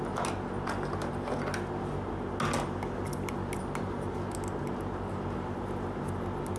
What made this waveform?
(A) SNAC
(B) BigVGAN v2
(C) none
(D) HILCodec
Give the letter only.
C